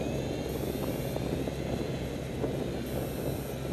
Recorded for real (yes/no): yes